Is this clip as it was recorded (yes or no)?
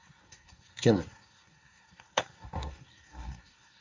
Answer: no